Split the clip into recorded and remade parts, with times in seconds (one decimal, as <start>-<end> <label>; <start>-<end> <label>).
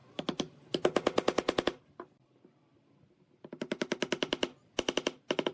0.0-5.5 recorded